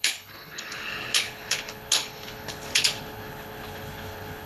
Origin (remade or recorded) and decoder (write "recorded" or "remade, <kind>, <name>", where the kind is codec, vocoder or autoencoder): remade, codec, HILCodec